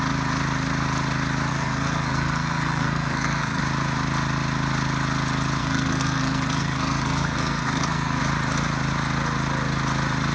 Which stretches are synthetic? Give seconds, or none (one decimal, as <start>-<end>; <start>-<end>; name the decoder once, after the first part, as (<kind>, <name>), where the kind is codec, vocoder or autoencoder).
1.5-3.6 (codec, SNAC); 5.6-8.2